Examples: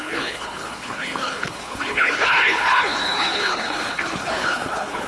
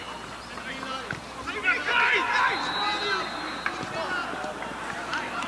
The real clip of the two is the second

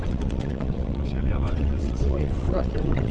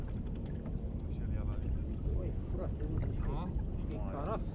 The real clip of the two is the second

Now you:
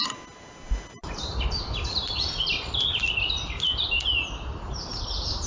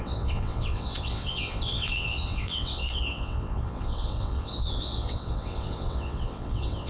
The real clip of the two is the first